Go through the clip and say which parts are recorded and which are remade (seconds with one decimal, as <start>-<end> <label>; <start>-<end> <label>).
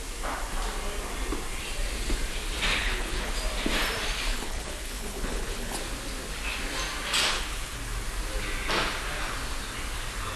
0.0-2.7 recorded; 2.7-3.3 remade; 3.3-4.3 recorded; 4.3-5.8 remade; 5.8-7.3 recorded; 7.3-7.8 remade; 7.8-10.4 recorded